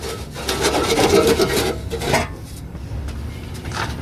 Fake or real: real